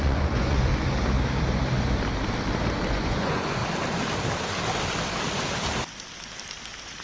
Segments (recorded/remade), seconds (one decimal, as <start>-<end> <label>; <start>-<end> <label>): 0.0-0.7 remade; 0.7-2.9 recorded; 2.9-3.6 remade; 3.6-7.0 recorded